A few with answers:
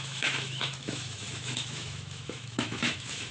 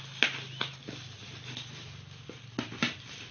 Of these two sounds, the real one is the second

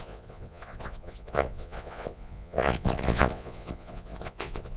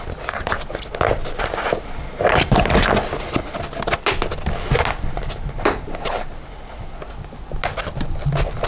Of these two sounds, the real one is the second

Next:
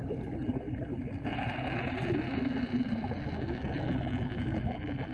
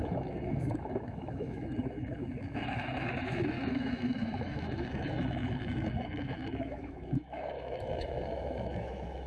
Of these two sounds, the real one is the first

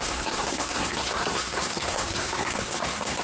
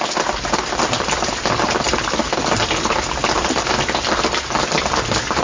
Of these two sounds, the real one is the second